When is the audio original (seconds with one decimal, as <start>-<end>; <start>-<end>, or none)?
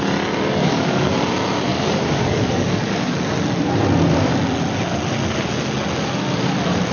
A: 0.0-0.6; 1.1-1.7; 3.2-6.9